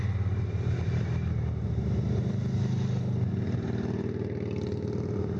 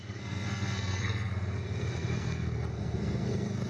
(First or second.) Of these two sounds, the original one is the first